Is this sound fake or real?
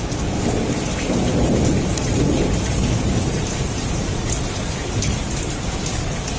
real